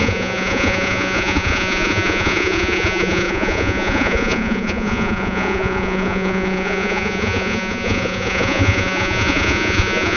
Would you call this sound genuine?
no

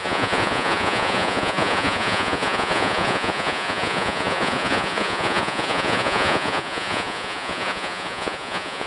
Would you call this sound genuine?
no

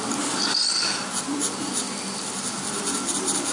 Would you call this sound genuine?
yes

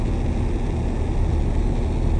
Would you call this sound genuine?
yes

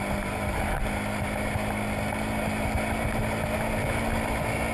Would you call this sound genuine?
yes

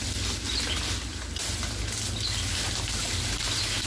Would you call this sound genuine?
yes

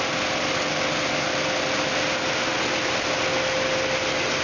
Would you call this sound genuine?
yes